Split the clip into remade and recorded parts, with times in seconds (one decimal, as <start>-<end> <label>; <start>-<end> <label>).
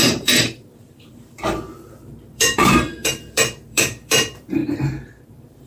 0.0-4.6 remade; 4.6-5.3 recorded; 5.3-5.7 remade